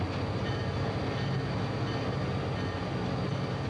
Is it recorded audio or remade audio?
recorded